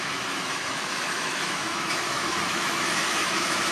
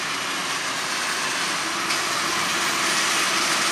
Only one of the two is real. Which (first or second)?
second